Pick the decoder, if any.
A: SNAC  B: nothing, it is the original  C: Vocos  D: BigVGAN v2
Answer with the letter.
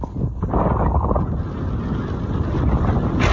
B